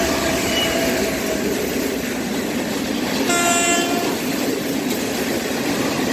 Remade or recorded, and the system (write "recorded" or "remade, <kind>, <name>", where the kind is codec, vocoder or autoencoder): recorded